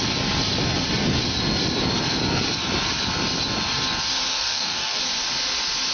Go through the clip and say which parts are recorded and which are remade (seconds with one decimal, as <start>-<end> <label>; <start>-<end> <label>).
0.0-4.3 recorded; 4.3-5.0 remade; 5.0-5.9 recorded